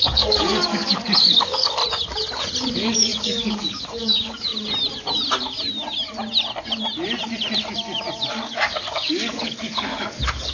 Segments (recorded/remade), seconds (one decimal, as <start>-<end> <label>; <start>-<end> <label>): 0.0-1.8 remade; 1.8-2.7 recorded; 2.7-4.5 remade; 4.5-8.3 recorded; 8.3-10.5 remade